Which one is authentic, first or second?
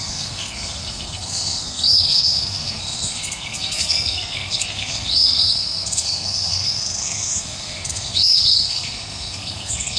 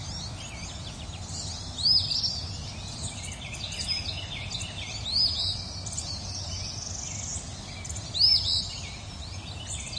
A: second